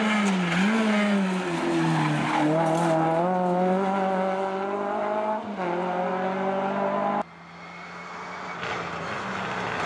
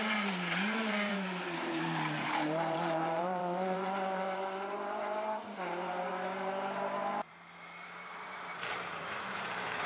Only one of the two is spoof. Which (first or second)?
second